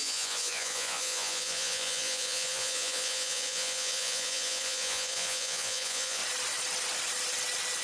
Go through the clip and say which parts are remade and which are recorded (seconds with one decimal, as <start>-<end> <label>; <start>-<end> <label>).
0.0-6.2 remade; 6.2-7.8 recorded